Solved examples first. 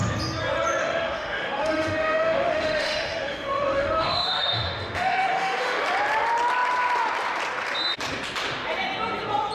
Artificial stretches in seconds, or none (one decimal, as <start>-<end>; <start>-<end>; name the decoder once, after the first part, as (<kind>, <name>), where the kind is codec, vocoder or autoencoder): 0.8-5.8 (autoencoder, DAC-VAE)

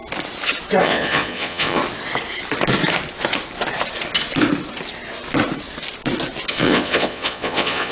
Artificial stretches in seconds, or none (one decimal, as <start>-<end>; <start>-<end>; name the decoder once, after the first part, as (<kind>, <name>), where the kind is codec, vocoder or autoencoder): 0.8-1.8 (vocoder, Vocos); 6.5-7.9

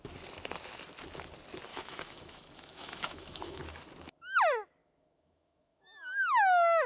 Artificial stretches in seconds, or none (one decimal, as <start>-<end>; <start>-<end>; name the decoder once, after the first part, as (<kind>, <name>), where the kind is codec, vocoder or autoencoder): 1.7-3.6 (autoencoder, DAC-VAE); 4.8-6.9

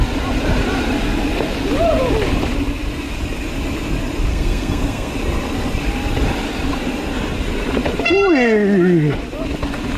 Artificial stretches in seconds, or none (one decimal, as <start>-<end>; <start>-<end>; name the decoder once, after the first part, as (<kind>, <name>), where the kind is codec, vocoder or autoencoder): 4.3-5.1 (codec, SNAC)

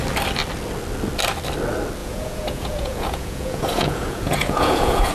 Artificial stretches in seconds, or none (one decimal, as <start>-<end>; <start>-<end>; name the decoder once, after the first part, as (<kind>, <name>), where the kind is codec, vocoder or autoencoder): 2.0-5.1 (vocoder, Vocos)

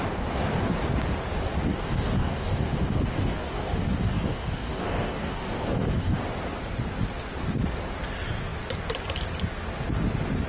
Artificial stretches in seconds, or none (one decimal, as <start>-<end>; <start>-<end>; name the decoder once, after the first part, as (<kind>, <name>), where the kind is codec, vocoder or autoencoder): 1.7-6.2 (codec, DAC)

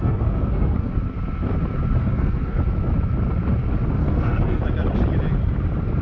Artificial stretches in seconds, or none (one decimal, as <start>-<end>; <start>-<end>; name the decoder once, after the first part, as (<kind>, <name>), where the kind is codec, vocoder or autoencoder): 0.0-0.9 (codec, SNAC); 2.0-2.6; 4.0-4.6